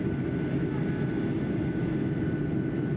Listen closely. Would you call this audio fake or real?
real